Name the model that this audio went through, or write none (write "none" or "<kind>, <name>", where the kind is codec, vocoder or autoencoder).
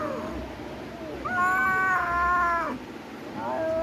none